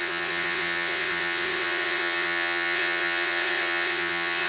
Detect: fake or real fake